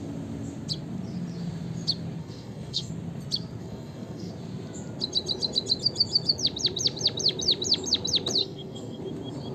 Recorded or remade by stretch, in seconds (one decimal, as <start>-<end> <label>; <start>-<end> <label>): 0.0-2.2 recorded; 2.2-2.9 remade; 2.9-3.6 recorded; 3.6-4.3 remade; 4.3-8.4 recorded; 8.4-9.0 remade; 9.0-9.5 recorded